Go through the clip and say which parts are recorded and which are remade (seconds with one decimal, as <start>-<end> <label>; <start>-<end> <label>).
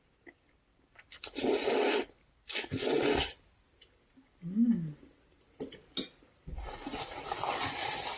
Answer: 0.0-0.7 recorded; 0.7-3.2 remade; 3.2-8.2 recorded